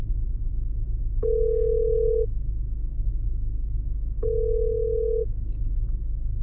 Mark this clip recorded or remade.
recorded